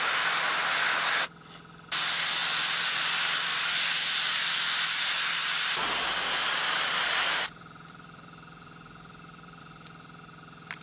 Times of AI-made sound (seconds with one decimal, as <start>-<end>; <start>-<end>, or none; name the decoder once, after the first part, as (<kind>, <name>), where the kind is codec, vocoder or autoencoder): 5.4-9.6 (vocoder, BigVGAN v2)